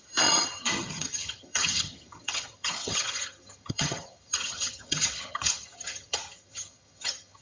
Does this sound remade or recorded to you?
remade